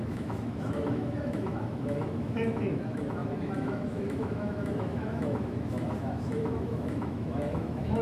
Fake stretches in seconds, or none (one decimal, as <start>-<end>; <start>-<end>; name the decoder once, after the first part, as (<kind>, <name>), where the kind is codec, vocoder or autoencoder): 0.0-8.0 (autoencoder, DAC-VAE)